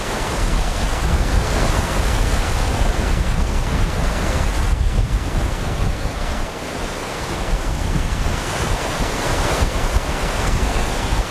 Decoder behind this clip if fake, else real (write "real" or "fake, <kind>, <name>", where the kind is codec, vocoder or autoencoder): fake, codec, SNAC